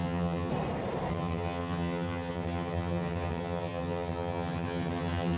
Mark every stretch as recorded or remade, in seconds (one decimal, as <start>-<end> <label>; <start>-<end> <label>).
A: 0.0-0.5 remade; 0.5-1.1 recorded; 1.1-5.4 remade

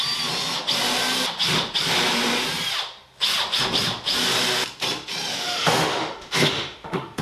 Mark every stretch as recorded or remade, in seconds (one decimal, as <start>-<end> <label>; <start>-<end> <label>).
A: 0.0-5.3 recorded; 5.3-7.2 remade